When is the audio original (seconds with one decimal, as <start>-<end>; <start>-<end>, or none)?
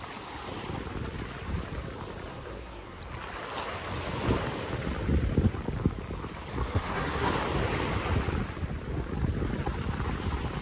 0.0-2.3; 3.0-6.6; 7.3-10.6